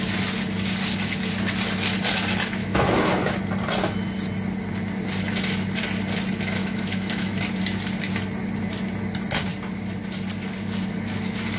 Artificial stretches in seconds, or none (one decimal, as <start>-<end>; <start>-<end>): 2.6-3.4; 6.6-7.4